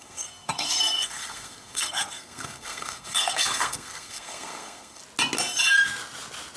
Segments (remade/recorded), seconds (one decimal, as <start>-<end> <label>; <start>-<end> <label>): 0.0-5.0 remade; 5.0-6.6 recorded